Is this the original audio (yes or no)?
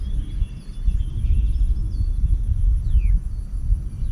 yes